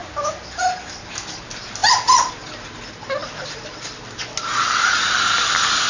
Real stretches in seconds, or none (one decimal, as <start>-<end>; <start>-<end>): 0.0-5.9